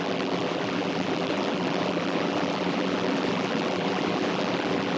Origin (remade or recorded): remade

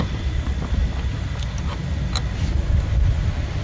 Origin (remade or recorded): recorded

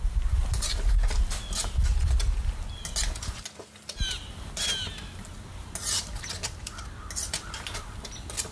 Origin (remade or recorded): recorded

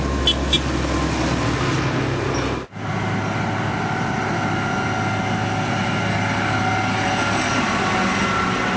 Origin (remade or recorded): recorded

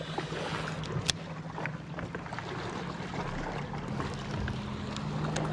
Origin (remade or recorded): recorded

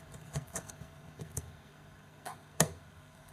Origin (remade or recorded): remade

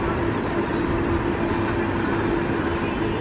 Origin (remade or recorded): recorded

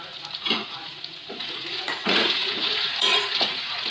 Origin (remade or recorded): remade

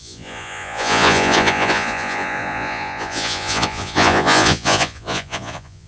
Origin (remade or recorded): remade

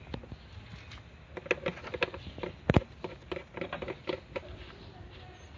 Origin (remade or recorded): recorded